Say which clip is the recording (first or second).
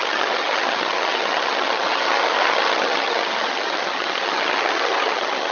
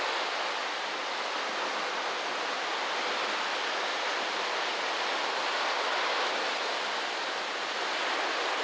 second